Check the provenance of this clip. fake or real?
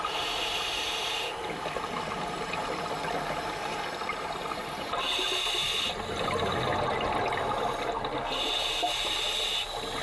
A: real